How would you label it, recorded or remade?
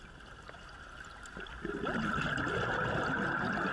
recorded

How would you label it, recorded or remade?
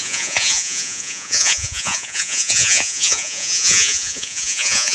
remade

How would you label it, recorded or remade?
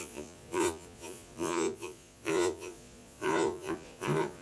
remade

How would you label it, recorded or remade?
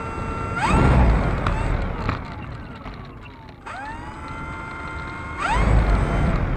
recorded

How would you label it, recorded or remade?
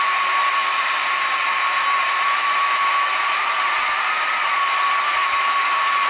recorded